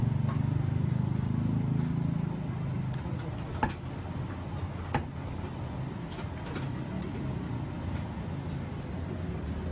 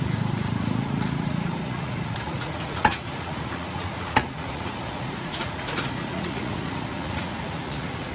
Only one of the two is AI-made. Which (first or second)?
second